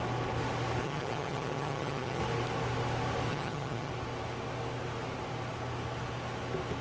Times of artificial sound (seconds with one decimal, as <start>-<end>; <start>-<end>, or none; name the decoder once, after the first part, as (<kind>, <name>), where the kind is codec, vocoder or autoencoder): 0.8-2.2 (vocoder, HiFi-GAN); 3.3-3.9